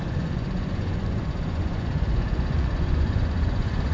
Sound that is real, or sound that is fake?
fake